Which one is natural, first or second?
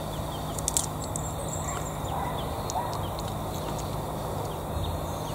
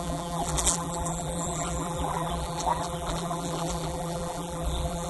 first